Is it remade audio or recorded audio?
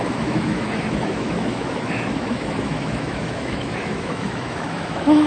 remade